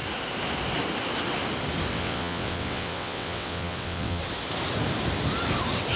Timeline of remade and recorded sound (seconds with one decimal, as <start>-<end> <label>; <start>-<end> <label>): 0.0-1.9 recorded; 1.9-4.2 remade; 4.2-6.0 recorded